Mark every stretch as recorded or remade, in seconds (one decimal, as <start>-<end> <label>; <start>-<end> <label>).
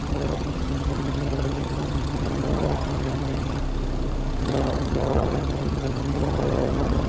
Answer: 0.0-3.6 remade; 3.6-4.4 recorded; 4.4-7.1 remade